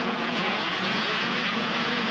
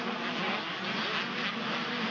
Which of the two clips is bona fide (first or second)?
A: second